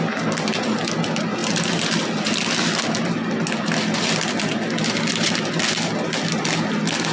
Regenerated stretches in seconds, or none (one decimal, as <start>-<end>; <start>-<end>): none